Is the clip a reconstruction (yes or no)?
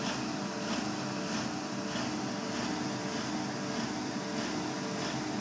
no